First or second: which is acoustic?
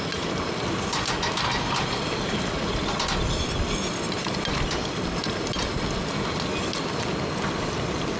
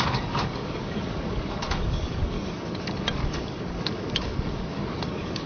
first